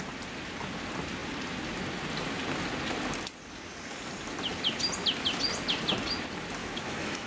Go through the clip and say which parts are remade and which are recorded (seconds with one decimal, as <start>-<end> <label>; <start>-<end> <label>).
0.0-6.6 recorded; 6.6-7.3 remade